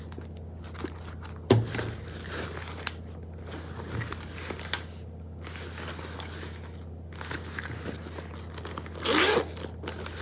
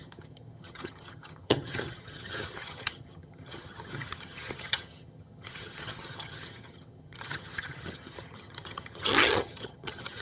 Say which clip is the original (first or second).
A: first